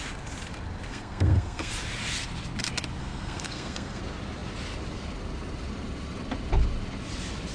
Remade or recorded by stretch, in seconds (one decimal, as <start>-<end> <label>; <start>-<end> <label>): 0.0-0.9 recorded; 0.9-1.7 remade; 1.7-3.0 recorded; 3.0-4.0 remade; 4.0-7.5 recorded